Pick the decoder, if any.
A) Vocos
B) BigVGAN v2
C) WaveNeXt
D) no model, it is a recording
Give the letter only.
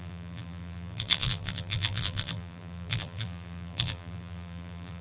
B